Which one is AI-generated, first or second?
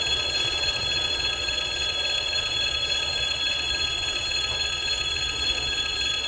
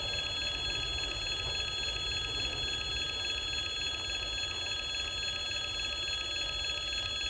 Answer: first